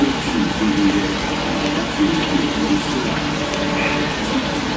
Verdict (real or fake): real